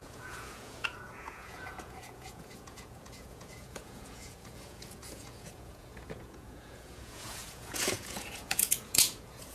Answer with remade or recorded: remade